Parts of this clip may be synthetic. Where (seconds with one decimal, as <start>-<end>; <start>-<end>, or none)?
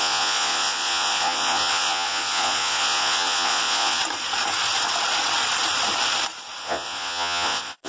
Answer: 0.0-4.0; 6.6-7.9